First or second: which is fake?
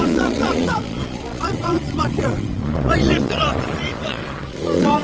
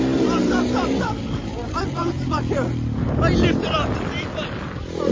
first